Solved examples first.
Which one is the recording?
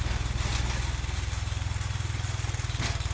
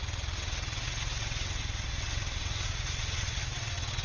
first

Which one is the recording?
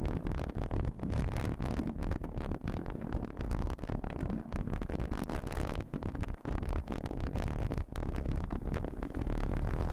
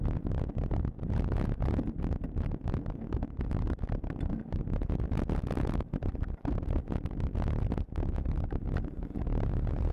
second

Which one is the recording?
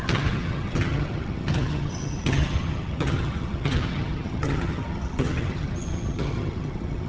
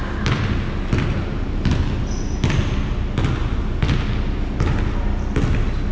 second